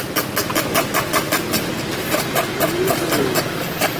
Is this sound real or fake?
real